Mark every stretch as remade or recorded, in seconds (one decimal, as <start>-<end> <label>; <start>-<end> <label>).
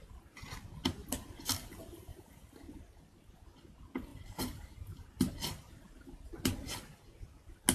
0.0-1.0 recorded; 1.0-1.5 remade; 1.5-2.1 recorded; 2.1-2.8 remade; 2.8-4.1 recorded; 4.1-5.1 remade; 5.1-7.7 recorded